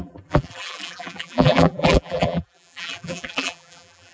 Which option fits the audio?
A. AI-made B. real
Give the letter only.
A